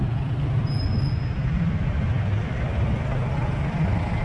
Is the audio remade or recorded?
recorded